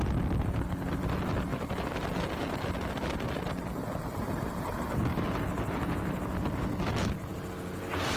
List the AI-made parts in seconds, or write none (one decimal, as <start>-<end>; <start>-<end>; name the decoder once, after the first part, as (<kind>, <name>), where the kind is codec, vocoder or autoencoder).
none